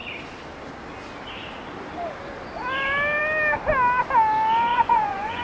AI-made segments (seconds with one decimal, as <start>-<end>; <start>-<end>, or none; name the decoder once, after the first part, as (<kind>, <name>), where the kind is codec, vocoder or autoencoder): 4.7-5.4 (vocoder, Vocos)

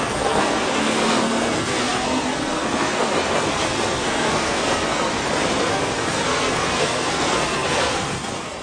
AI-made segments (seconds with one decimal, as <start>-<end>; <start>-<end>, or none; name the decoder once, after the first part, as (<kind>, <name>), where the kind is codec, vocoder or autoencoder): 0.0-5.1 (codec, SNAC); 5.6-8.6

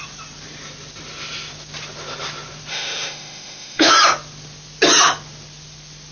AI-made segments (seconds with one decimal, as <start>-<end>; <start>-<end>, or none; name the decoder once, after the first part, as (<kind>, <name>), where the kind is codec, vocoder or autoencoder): 2.7-3.9 (autoencoder, DAC-VAE)

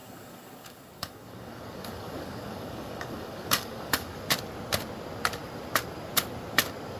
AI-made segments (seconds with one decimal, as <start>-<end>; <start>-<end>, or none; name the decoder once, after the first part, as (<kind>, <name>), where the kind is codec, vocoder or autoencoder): 0.0-4.2 (codec, DAC)

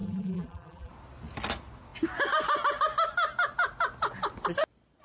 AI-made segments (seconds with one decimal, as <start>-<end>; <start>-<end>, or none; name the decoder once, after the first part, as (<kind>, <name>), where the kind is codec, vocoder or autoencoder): 0.0-0.9 (vocoder, BigVGAN v2)

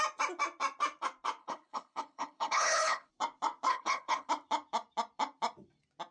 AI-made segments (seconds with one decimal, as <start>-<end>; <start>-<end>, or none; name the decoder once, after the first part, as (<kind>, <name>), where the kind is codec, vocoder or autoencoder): 1.4-3.1 (codec, HILCodec); 3.7-4.3